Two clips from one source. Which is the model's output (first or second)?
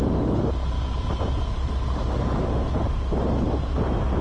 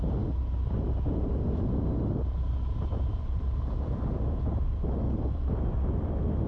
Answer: second